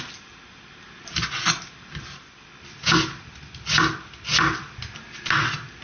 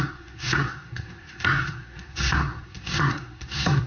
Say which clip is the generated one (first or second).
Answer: second